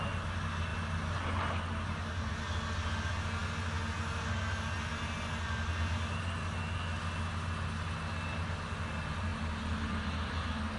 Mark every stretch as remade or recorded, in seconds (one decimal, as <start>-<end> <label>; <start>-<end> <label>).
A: 0.0-10.8 recorded